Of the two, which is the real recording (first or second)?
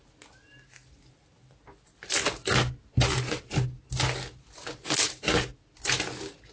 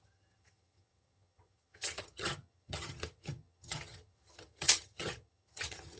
first